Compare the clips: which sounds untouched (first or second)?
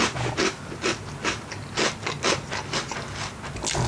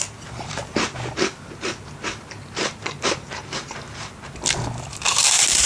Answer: first